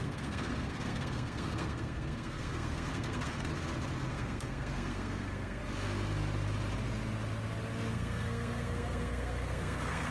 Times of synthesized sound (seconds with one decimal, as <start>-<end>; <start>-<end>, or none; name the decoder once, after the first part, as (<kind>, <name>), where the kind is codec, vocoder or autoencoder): 0.0-3.5 (codec, SNAC); 4.1-5.6; 7.9-10.1